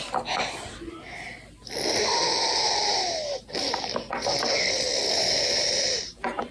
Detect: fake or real real